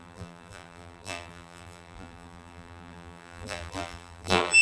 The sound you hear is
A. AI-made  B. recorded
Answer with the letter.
A